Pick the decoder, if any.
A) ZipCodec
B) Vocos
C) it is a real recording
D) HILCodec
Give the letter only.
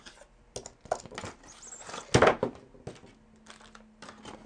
C